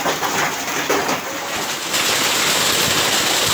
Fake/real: real